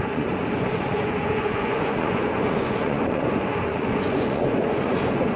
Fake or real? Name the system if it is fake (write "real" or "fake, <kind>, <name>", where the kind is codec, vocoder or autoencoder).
fake, vocoder, Vocos